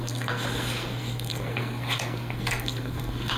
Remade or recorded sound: remade